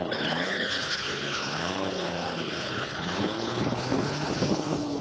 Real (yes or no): no